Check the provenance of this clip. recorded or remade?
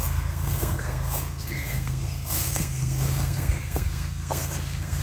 remade